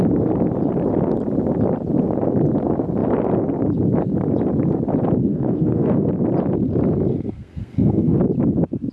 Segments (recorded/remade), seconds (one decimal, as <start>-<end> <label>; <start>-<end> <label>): 0.0-5.3 recorded; 5.3-6.1 remade; 6.1-7.1 recorded; 7.1-8.2 remade; 8.2-8.9 recorded